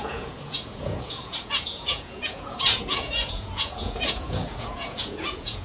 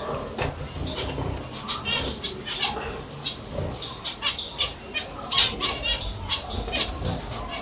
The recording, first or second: second